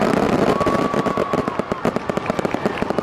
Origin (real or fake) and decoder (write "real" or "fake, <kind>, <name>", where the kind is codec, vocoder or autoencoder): real